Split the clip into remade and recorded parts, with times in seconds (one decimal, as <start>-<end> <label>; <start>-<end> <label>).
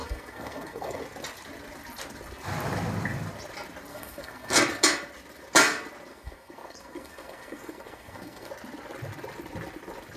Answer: 0.0-1.0 remade; 1.0-3.9 recorded; 3.9-4.6 remade; 4.6-6.1 recorded; 6.1-8.5 remade; 8.5-10.2 recorded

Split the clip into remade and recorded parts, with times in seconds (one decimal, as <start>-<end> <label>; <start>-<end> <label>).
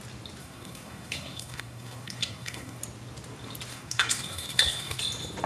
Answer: 0.0-0.4 recorded; 0.4-2.8 remade; 2.8-3.7 recorded; 3.7-5.0 remade; 5.0-5.5 recorded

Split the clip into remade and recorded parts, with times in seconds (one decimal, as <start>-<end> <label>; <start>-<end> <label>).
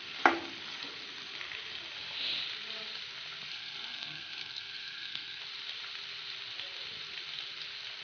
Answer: 0.0-3.5 recorded; 3.5-5.4 remade; 5.4-8.0 recorded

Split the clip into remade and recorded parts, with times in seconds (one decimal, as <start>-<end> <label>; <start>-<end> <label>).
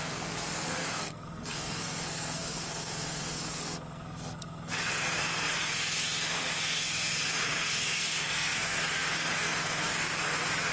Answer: 0.0-10.7 remade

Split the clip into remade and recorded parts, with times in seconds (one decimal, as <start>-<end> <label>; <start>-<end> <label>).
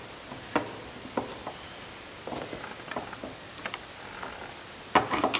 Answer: 0.0-5.4 recorded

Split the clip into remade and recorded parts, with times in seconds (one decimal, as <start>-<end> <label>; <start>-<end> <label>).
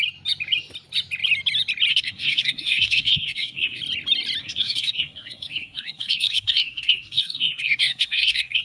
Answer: 0.0-1.9 recorded; 1.9-3.8 remade; 3.8-4.4 recorded; 4.4-8.6 remade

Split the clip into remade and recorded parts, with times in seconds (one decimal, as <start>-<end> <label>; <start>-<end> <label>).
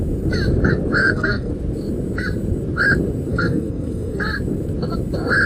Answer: 0.0-1.0 recorded; 1.0-1.5 remade; 1.5-3.3 recorded; 3.3-4.2 remade; 4.2-5.5 recorded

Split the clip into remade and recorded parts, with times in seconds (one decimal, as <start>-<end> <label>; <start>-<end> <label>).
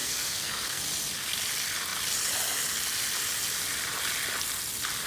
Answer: 0.0-0.8 remade; 0.8-5.1 recorded